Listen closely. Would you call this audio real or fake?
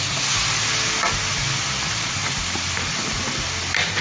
real